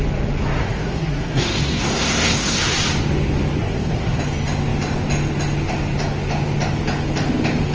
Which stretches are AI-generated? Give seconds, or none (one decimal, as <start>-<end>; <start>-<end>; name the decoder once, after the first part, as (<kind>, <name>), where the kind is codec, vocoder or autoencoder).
0.6-2.6 (codec, SNAC); 3.6-4.2